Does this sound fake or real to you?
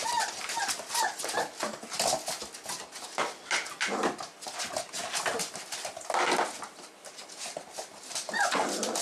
real